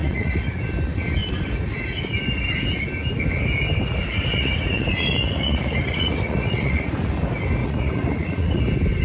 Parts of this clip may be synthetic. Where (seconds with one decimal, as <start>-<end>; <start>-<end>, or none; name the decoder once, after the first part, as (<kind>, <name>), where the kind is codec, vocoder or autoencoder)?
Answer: 0.0-0.7 (vocoder, Vocos); 4.3-6.9; 7.6-8.6